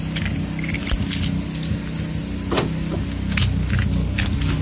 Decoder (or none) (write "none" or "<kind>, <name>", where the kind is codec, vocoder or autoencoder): none